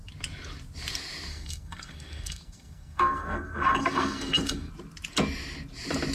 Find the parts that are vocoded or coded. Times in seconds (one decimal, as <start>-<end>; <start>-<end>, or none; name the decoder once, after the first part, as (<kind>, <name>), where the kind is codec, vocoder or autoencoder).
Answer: 1.3-4.7 (codec, SNAC)